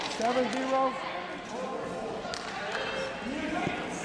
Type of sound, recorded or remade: recorded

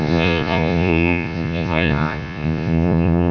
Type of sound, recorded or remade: remade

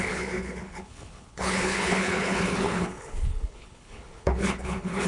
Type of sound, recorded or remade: remade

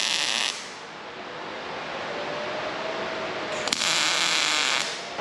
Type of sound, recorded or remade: recorded